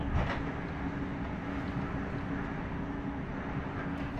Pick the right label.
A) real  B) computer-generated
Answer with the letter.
A